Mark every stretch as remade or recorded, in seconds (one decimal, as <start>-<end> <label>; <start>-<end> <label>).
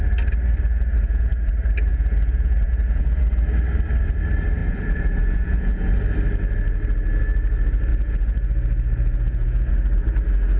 0.0-0.9 recorded; 0.9-1.5 remade; 1.5-1.9 recorded; 1.9-3.2 remade; 3.2-4.6 recorded; 4.6-6.0 remade; 6.0-7.9 recorded; 7.9-9.7 remade; 9.7-10.6 recorded